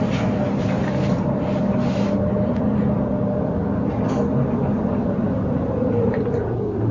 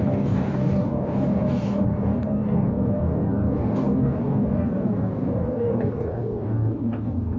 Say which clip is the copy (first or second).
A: second